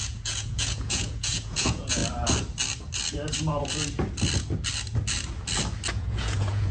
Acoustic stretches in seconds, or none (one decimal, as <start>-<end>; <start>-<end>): 2.0-5.9